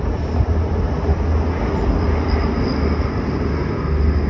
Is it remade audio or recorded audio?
recorded